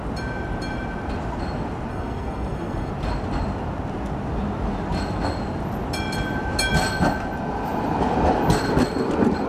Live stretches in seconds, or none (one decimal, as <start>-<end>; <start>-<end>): 0.0-1.9; 2.9-9.5